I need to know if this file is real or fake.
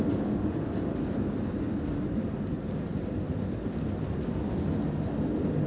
real